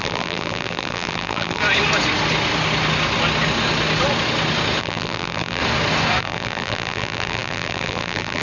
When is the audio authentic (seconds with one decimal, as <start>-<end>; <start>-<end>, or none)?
1.6-4.8; 5.6-6.2